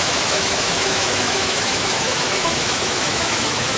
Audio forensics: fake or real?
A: fake